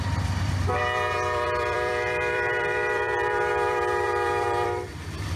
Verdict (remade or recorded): remade